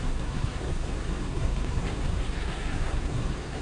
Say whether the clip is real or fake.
fake